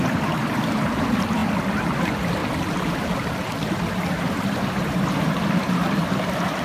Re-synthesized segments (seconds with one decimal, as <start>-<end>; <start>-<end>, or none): 1.4-2.0; 2.4-6.6